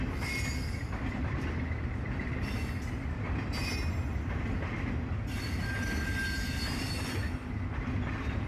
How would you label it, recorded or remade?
recorded